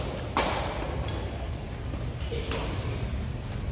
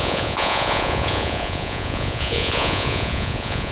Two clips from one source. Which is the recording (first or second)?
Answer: first